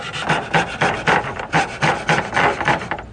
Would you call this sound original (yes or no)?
yes